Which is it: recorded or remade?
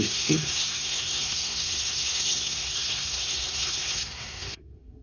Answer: remade